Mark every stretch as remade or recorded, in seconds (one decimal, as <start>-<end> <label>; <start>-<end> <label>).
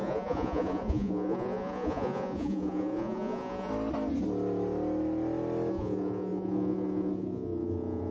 0.0-3.7 remade; 3.7-5.7 recorded; 5.7-8.1 remade